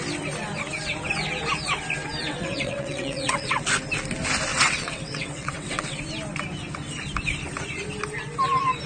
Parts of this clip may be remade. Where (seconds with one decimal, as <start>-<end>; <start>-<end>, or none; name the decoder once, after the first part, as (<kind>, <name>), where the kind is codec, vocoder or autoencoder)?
2.3-3.6 (vocoder, WaveNeXt); 4.5-6.0